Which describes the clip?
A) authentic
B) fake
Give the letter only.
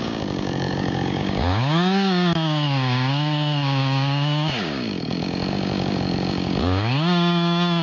B